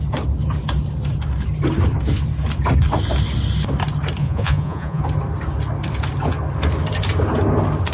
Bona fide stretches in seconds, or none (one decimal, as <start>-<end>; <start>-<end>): 0.0-4.2; 5.0-7.9